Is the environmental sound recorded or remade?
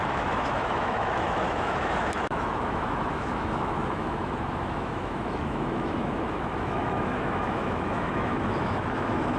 remade